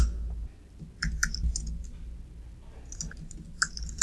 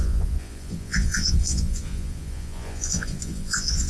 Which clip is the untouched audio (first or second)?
first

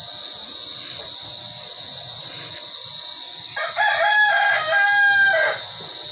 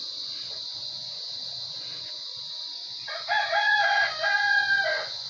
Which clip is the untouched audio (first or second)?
first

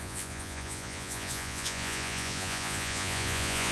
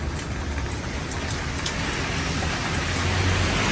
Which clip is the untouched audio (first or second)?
second